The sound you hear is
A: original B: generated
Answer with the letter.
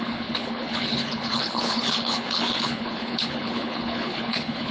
B